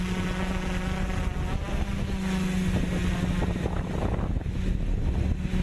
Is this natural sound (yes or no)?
yes